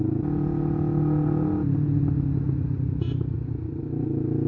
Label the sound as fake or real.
real